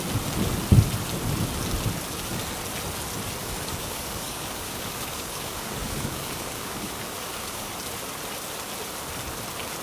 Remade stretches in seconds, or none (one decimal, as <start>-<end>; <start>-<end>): 3.4-7.7